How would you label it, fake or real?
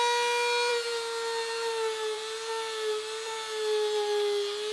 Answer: real